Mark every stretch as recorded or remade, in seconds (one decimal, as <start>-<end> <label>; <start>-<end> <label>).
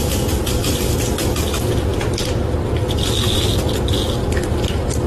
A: 0.0-5.1 recorded